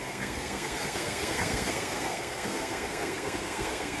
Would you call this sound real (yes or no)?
no